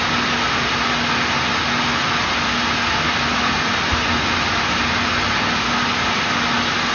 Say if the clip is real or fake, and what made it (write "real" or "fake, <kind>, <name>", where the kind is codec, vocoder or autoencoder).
real